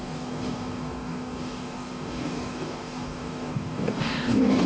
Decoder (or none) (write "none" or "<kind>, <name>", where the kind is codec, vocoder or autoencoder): codec, DAC